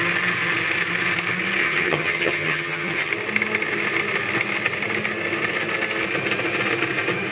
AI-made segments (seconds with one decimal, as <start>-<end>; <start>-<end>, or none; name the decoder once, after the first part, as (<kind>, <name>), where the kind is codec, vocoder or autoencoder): 1.6-3.1 (vocoder, HiFi-GAN)